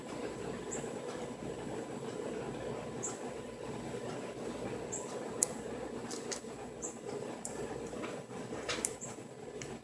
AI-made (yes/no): no